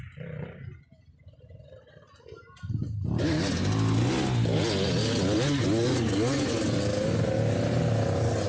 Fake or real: real